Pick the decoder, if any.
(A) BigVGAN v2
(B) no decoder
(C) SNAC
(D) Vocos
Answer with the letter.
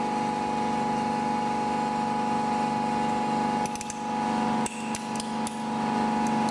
B